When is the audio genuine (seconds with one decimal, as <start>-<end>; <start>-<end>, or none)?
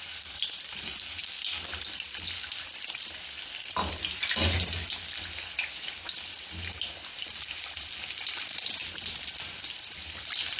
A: 0.0-10.6